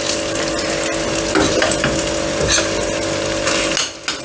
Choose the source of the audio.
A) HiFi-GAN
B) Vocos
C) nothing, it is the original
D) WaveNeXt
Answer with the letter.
C